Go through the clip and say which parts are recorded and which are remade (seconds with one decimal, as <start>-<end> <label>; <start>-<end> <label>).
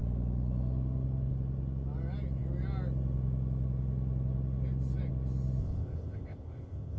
0.0-5.6 recorded; 5.6-7.0 remade